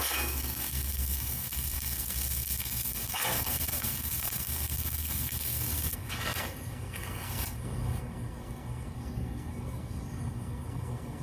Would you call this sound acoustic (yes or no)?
no